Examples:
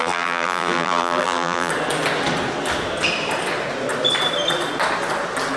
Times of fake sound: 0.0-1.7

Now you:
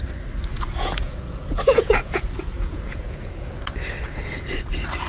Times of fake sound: 0.5-3.6

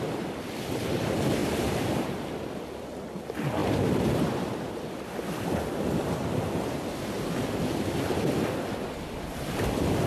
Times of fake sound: 1.4-2.3

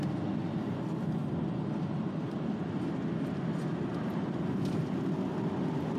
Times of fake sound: none

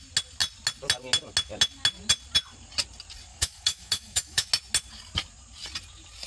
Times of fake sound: 3.3-4.5

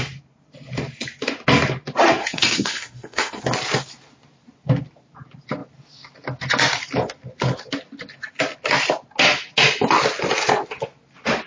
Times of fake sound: 2.2-3.4

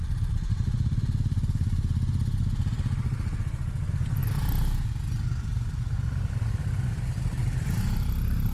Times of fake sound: 5.5-6.3

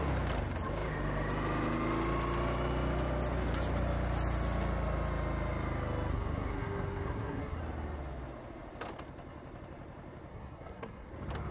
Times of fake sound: 6.1-7.6; 10.3-11.1